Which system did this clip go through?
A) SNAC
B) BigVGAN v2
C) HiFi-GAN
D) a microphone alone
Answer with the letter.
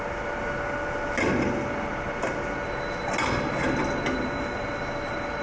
D